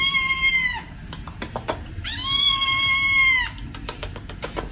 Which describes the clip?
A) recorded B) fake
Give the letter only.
A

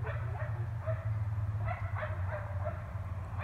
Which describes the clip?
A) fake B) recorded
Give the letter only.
B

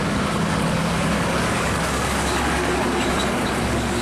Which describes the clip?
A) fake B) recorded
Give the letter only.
A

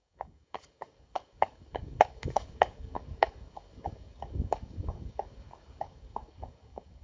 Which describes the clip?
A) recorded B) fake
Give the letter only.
B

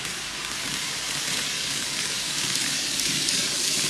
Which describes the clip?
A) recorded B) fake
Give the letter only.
B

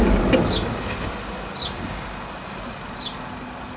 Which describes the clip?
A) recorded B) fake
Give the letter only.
A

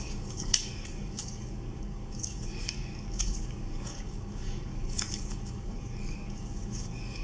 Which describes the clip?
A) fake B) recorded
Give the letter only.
A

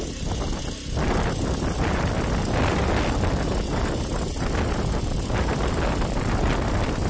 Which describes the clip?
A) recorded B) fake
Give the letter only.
A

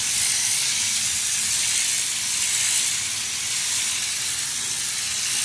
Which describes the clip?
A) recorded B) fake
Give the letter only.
A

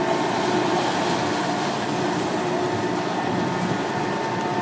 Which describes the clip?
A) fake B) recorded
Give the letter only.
B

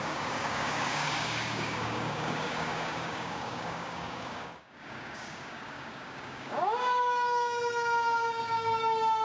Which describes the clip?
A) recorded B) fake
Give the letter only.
B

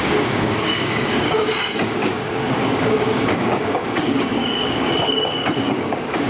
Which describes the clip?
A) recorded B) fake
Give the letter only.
B